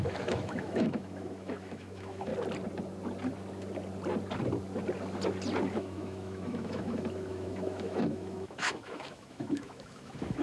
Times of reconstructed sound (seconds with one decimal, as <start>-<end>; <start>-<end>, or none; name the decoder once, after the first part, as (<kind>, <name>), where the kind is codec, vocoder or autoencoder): 0.0-2.3 (autoencoder, DAC-VAE); 5.7-10.4